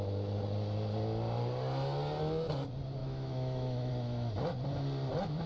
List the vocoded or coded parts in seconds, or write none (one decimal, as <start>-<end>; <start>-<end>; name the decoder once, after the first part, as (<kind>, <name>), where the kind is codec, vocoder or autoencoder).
3.0-3.9 (autoencoder, DAC-VAE)